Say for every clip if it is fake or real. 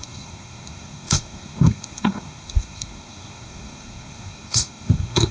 fake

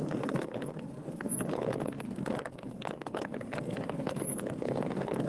fake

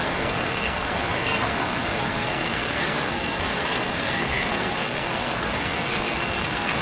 fake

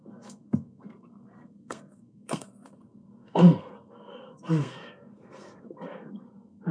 fake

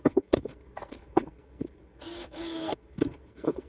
fake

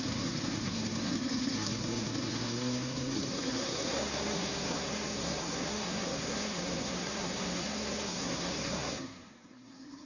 fake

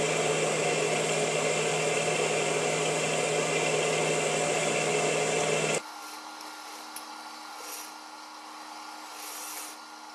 real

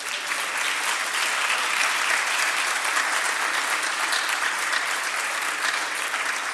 real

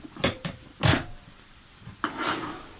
real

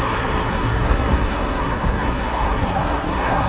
fake